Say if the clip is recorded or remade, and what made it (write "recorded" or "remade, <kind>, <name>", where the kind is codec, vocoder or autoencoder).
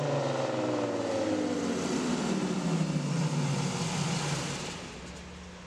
recorded